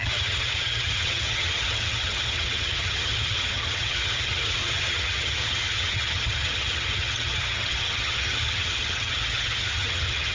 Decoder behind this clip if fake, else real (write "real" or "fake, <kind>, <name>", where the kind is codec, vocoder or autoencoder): fake, vocoder, HiFi-GAN